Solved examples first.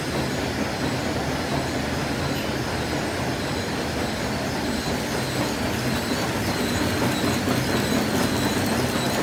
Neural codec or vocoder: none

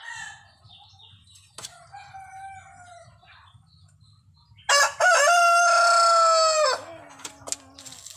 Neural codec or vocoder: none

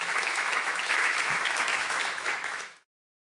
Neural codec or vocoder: autoencoder, DAC-VAE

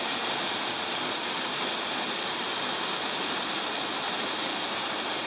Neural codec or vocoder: none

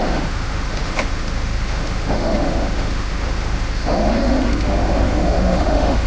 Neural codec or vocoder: autoencoder, DAC-VAE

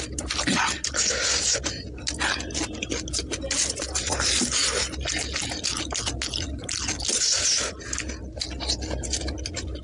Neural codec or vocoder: none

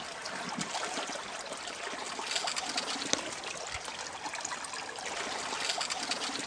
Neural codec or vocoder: none